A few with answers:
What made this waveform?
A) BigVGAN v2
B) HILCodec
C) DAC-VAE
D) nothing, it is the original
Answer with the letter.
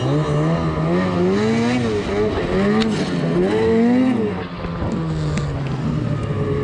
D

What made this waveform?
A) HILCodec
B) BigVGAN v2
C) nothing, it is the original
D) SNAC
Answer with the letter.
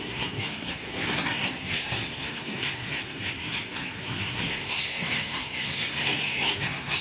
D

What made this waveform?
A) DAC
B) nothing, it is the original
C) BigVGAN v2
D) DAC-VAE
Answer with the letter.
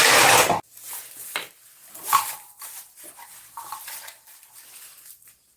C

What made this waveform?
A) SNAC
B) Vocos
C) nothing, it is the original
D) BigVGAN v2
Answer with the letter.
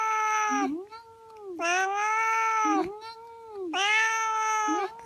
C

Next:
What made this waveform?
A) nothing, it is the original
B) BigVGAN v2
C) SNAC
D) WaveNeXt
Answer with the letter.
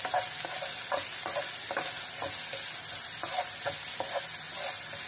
A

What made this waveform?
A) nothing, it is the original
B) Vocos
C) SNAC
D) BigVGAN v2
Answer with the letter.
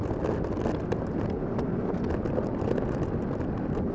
A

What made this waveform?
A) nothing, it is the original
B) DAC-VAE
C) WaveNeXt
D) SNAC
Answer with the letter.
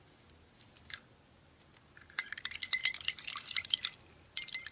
A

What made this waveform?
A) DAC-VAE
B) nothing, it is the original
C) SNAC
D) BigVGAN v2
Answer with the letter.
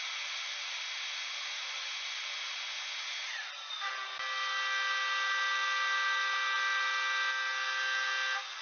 B